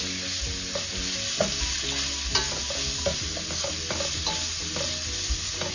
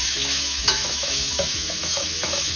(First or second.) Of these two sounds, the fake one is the second